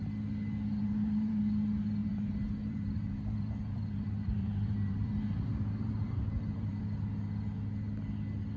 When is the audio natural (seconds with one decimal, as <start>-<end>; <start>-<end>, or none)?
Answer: 0.0-0.8; 1.4-2.0; 6.8-8.6